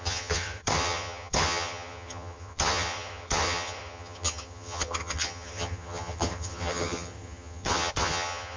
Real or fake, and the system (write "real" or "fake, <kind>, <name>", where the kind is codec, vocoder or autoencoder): fake, vocoder, HiFi-GAN